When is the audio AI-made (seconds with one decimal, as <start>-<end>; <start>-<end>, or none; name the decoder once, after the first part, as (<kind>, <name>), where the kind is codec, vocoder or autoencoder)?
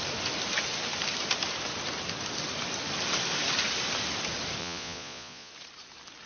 4.6-5.5 (vocoder, Vocos)